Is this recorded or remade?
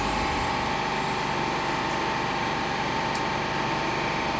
recorded